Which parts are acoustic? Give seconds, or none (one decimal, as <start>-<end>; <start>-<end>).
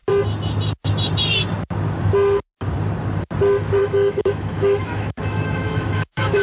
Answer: 0.0-3.8